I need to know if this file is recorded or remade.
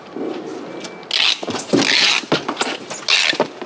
recorded